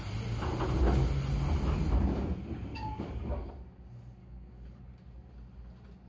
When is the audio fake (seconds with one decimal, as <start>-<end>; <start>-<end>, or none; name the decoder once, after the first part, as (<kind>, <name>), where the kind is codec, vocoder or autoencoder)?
2.7-3.5 (codec, DAC); 4.2-4.8